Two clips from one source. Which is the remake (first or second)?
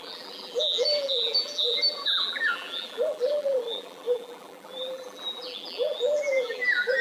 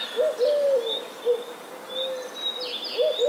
first